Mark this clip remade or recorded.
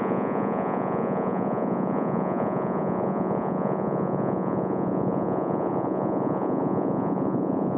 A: remade